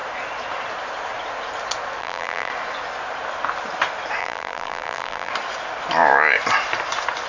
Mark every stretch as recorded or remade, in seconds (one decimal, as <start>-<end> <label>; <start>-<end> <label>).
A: 0.0-2.0 recorded; 2.0-2.5 remade; 2.5-4.2 recorded; 4.2-5.3 remade; 5.3-7.3 recorded